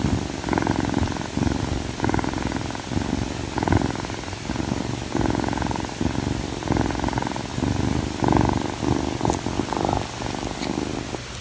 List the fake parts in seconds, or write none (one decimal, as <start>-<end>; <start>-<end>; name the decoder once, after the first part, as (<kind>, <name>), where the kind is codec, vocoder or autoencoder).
none